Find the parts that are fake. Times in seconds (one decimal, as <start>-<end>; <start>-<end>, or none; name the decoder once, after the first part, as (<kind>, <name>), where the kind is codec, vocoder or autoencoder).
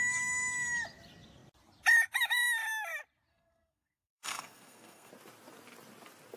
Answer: 3.3-5.1 (codec, SNAC)